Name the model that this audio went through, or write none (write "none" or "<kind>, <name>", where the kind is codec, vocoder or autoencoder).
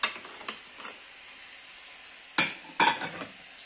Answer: none